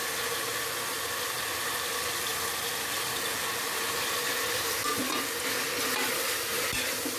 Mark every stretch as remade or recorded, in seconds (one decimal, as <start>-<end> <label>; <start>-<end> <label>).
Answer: 0.0-7.2 recorded